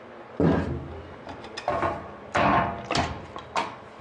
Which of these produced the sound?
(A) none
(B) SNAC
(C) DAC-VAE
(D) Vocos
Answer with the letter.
A